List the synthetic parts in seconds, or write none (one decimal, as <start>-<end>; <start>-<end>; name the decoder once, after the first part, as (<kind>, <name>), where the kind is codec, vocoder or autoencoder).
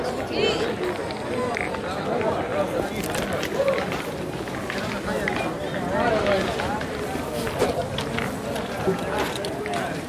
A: none